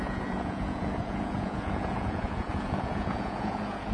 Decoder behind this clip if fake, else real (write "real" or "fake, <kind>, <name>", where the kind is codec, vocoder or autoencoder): fake, vocoder, Vocos